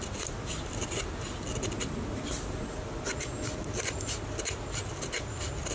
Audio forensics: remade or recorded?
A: recorded